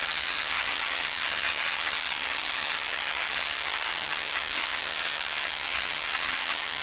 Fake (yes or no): yes